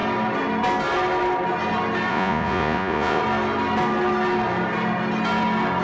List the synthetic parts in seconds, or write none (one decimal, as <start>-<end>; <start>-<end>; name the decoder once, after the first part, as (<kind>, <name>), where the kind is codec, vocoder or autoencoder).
2.1-3.2 (vocoder, Vocos)